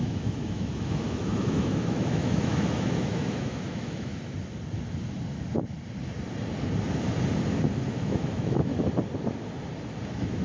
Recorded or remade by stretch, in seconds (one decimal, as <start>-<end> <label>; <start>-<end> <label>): 0.0-4.1 remade; 4.1-7.9 recorded; 7.9-8.7 remade; 8.7-10.0 recorded; 10.0-10.4 remade